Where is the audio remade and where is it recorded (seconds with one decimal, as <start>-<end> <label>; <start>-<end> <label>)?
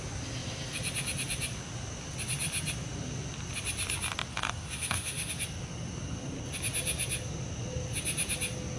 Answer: 0.0-4.3 recorded; 4.3-5.3 remade; 5.3-8.8 recorded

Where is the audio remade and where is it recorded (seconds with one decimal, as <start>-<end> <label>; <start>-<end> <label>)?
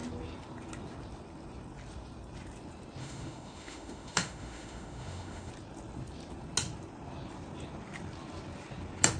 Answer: 0.0-3.0 recorded; 3.0-5.5 remade; 5.5-9.2 recorded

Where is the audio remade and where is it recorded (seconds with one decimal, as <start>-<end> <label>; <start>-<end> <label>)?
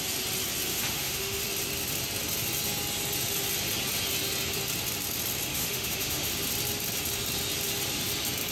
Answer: 0.0-0.7 recorded; 0.7-1.4 remade; 1.4-5.5 recorded; 5.5-6.3 remade; 6.3-8.5 recorded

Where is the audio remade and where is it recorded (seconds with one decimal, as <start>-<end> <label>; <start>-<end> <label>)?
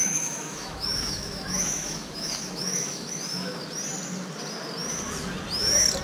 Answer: 0.0-3.6 remade; 3.6-6.0 recorded